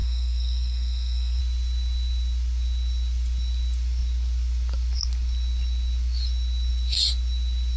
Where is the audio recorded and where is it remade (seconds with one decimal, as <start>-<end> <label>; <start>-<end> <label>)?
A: 0.0-1.4 remade; 1.4-7.8 recorded